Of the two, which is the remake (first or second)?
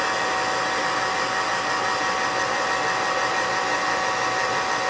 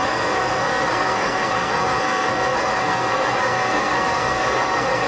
second